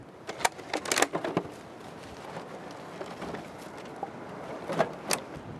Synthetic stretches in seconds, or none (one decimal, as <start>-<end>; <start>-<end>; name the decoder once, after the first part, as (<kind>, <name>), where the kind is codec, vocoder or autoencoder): 0.0-0.6 (vocoder, BigVGAN v2)